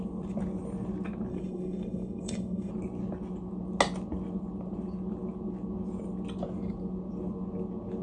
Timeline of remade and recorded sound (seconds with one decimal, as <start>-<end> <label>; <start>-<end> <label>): 0.0-1.3 recorded; 1.3-2.7 remade; 2.7-8.0 recorded

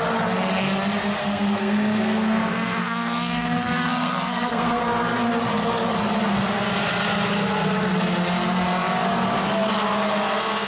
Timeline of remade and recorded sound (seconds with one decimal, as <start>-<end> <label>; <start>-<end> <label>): 0.0-1.2 recorded; 1.2-4.8 remade; 4.8-10.7 recorded

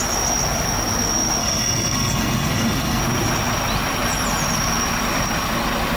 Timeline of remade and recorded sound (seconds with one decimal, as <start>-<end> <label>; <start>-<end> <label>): 0.0-1.4 recorded; 1.4-3.0 remade; 3.0-6.0 recorded

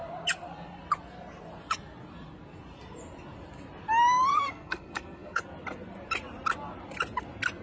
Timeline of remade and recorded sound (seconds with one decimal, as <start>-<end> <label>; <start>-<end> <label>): 0.0-4.3 recorded; 4.3-5.4 remade; 5.4-7.6 recorded